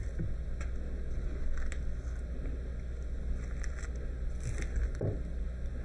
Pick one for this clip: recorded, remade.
recorded